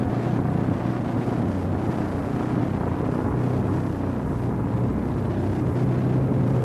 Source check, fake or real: real